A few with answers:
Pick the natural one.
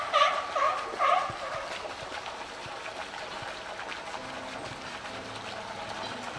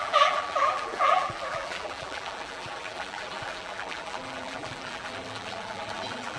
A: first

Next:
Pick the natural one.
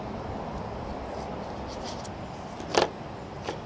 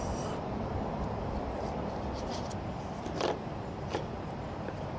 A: first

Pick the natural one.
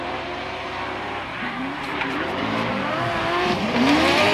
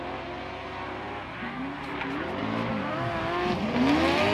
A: second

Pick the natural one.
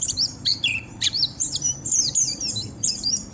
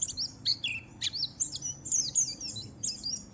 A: second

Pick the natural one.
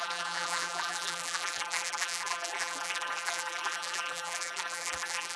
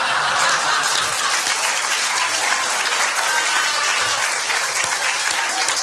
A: second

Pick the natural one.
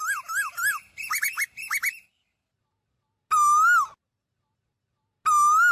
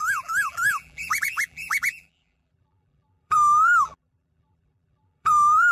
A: first